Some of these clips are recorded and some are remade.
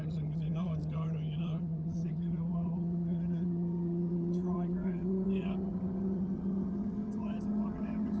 remade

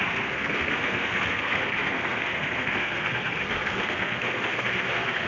remade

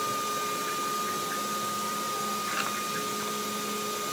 recorded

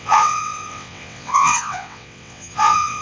remade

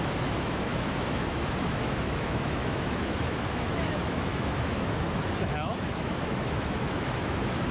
remade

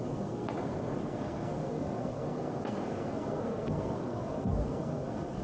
remade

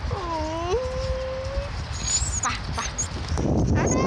recorded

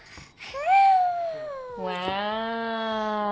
recorded